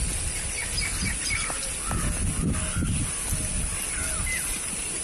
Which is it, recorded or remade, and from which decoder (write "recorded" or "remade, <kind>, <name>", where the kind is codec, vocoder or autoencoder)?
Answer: recorded